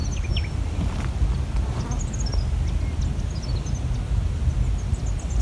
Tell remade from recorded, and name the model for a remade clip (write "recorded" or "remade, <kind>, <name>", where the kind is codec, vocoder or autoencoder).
recorded